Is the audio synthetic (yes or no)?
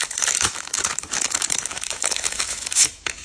yes